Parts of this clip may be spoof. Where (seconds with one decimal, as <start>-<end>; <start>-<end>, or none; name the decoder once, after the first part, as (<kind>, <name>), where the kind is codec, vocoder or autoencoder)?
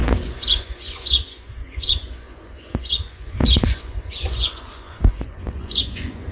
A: 0.0-6.3 (vocoder, Vocos)